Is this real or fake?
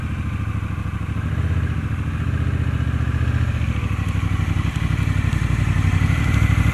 real